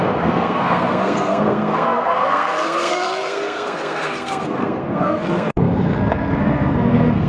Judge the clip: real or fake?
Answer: fake